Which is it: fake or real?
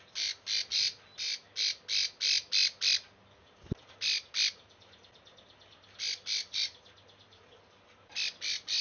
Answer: real